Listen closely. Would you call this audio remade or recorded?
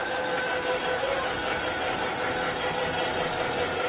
recorded